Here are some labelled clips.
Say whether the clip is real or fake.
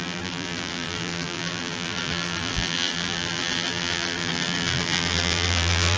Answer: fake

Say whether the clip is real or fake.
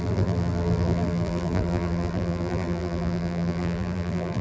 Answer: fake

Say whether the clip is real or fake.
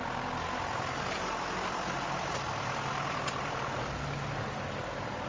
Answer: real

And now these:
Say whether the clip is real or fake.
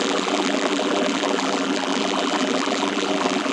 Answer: fake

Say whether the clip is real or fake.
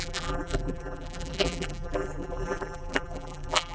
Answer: fake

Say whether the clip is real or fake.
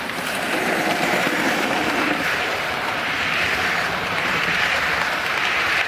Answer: fake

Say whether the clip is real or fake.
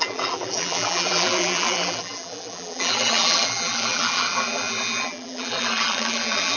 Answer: fake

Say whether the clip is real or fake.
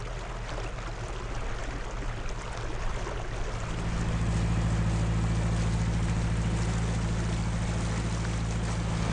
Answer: real